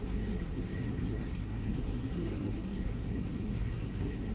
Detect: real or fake fake